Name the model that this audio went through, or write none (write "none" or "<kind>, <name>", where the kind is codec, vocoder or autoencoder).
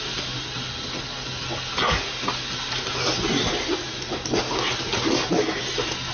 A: none